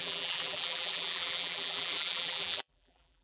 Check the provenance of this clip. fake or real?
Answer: fake